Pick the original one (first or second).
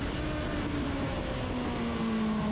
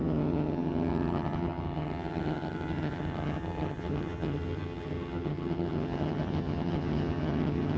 first